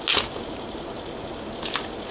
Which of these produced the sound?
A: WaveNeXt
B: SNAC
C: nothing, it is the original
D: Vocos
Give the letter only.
C